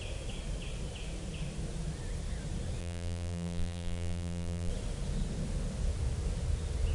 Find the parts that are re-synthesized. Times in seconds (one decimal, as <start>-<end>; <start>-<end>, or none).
2.8-4.7